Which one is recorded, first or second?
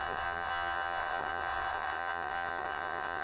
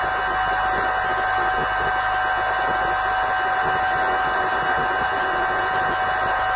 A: second